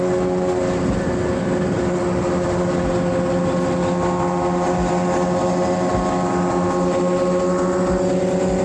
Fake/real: real